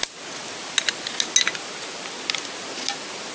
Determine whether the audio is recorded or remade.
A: recorded